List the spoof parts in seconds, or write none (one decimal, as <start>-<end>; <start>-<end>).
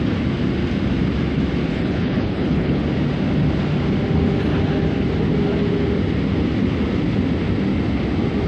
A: 1.7-2.8